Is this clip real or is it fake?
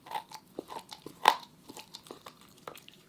fake